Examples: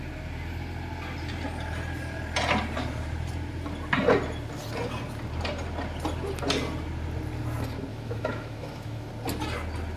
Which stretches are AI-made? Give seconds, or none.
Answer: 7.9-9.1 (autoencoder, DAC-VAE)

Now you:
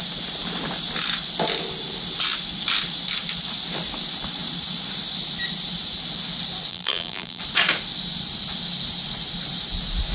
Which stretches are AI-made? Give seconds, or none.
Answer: 6.7-7.4 (vocoder, BigVGAN v2)

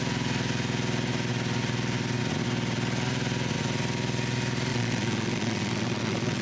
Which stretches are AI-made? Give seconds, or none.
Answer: 4.7-6.4 (vocoder, Vocos)

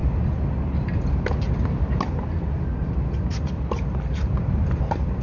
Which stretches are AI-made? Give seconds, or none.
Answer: none

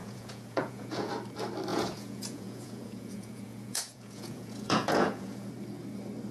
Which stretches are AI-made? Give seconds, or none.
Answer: 0.0-1.1 (vocoder, Vocos); 1.7-5.5

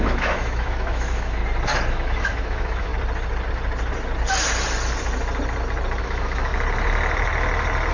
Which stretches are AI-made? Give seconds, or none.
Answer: 0.0-1.4 (autoencoder, DAC-VAE); 1.9-2.9; 6.0-6.5

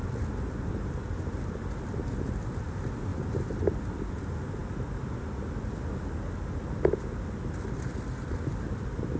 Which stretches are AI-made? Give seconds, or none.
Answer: none